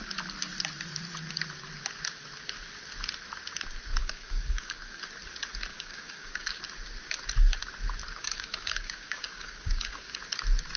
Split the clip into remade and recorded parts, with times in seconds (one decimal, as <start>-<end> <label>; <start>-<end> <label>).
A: 0.0-4.0 recorded; 4.0-5.0 remade; 5.0-5.7 recorded; 5.7-6.6 remade; 6.6-8.2 recorded; 8.2-10.2 remade; 10.2-10.8 recorded